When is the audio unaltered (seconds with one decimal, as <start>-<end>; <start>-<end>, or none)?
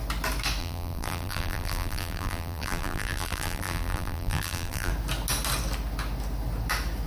0.0-0.6; 4.9-7.1